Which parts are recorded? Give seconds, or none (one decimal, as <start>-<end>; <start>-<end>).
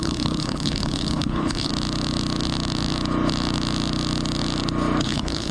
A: 1.7-5.0